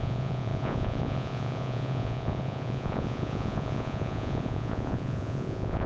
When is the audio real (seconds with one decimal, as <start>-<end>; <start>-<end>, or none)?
none